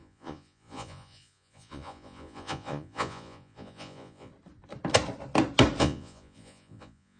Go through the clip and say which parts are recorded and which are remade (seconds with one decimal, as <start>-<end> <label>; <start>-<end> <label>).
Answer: 0.0-4.3 remade; 4.3-5.8 recorded; 5.8-7.2 remade